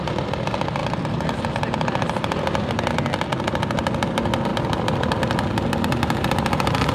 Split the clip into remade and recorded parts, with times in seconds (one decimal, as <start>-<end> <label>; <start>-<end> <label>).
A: 0.0-0.8 recorded; 0.8-2.9 remade; 2.9-3.3 recorded; 3.3-3.8 remade; 3.8-6.9 recorded